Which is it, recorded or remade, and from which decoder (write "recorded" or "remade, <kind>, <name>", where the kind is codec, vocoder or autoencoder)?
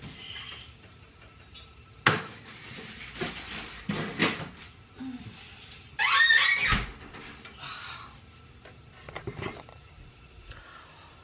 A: recorded